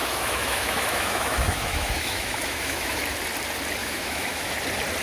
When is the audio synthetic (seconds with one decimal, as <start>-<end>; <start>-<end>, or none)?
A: 0.0-3.0; 3.8-4.5